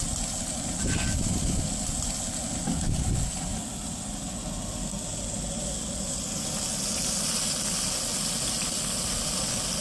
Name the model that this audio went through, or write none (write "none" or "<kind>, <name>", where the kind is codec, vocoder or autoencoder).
none